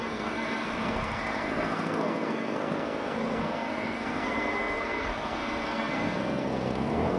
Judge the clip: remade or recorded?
remade